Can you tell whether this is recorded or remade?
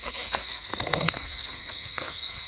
remade